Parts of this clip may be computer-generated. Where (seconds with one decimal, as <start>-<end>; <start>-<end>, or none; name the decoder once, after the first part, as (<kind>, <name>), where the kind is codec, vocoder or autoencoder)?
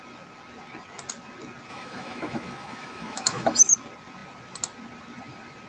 1.7-3.6 (autoencoder, DAC-VAE)